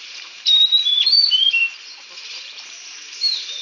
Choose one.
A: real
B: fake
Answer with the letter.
B